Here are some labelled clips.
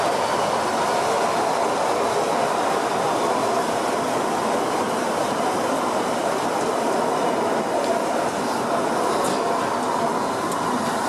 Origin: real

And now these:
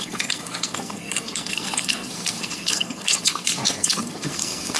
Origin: fake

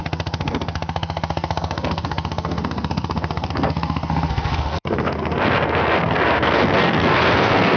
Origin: fake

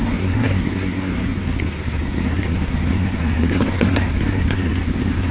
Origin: fake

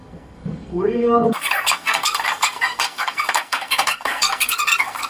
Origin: fake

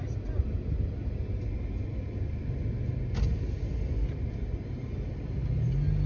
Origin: real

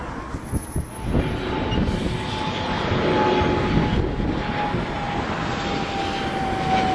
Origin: real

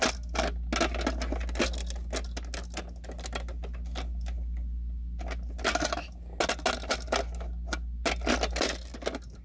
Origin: real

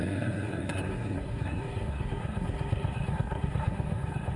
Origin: fake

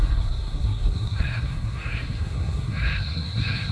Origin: fake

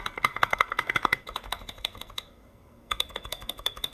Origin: fake